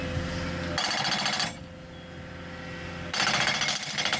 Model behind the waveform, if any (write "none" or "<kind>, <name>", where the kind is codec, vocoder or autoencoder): none